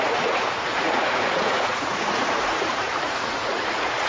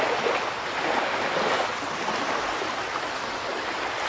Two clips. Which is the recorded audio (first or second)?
second